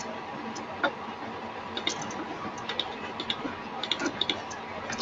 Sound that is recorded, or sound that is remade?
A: recorded